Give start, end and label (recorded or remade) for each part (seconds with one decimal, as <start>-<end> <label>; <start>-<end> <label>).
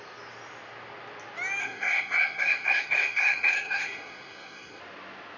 0.0-1.6 recorded; 1.6-4.8 remade; 4.8-5.4 recorded